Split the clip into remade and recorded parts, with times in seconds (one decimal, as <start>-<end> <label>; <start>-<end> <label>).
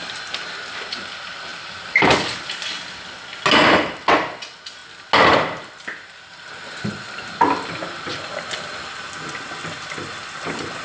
0.0-1.5 recorded; 1.5-2.3 remade; 2.3-10.8 recorded